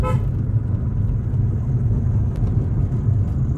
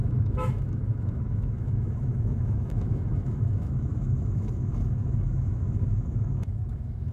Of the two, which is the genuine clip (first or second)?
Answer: first